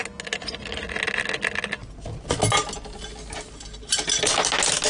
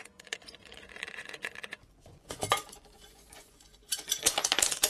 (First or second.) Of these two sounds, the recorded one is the first